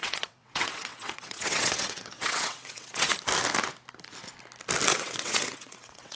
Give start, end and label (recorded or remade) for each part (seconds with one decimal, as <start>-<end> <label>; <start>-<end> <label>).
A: 0.0-3.1 remade; 3.1-4.9 recorded; 4.9-6.2 remade

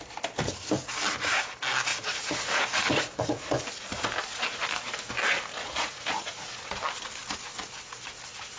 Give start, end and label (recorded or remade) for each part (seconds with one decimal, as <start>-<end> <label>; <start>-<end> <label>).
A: 0.0-1.9 recorded; 1.9-3.6 remade; 3.6-5.5 recorded; 5.5-6.7 remade; 6.7-8.6 recorded

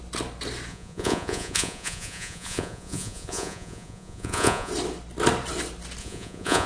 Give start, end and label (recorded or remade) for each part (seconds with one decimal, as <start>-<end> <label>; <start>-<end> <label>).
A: 0.0-0.7 recorded; 0.7-4.7 remade; 4.7-6.0 recorded; 6.0-6.7 remade

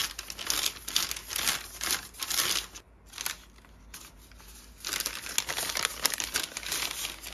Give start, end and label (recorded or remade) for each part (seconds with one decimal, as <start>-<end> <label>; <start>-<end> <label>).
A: 0.0-7.3 recorded